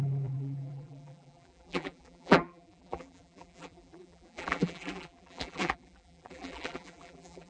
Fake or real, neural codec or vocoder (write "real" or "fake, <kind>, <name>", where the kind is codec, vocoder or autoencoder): fake, vocoder, BigVGAN v2